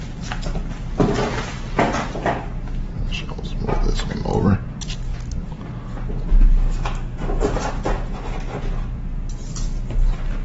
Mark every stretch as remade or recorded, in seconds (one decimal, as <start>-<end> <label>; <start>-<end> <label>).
0.0-7.2 recorded; 7.2-7.7 remade; 7.7-10.4 recorded